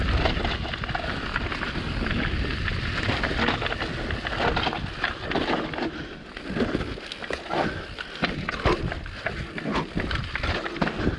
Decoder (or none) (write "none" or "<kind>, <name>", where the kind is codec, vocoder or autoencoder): none